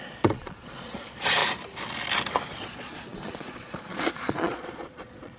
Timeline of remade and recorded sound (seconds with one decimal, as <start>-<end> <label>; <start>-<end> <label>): 0.0-1.4 remade; 1.4-2.5 recorded; 2.5-5.4 remade